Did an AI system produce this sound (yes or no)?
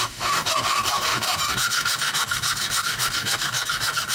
yes